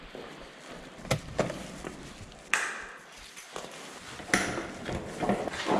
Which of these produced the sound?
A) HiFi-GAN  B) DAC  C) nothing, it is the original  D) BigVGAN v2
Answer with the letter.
C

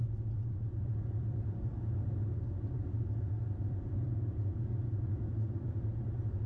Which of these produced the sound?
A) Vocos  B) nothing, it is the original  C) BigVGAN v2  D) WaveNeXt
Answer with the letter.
C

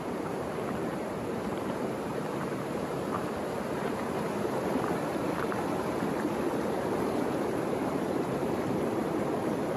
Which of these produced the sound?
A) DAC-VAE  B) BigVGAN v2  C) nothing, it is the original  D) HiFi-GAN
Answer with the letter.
B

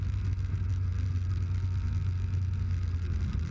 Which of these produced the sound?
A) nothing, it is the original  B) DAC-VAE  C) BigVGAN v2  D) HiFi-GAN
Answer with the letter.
A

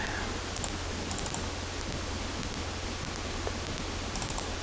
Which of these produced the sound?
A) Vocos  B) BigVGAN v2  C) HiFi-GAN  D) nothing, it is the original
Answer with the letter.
D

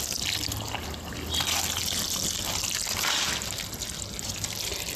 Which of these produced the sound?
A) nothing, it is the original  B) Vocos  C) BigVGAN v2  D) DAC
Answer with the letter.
A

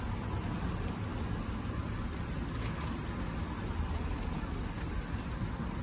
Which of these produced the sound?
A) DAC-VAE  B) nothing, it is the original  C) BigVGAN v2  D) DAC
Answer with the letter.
B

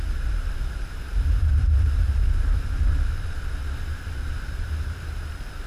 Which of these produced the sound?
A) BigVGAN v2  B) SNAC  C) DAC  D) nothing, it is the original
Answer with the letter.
A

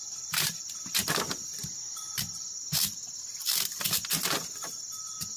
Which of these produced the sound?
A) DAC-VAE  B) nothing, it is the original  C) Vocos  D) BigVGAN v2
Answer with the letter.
B